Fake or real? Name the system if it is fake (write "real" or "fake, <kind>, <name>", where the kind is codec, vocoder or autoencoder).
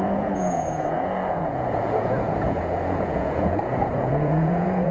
fake, vocoder, Vocos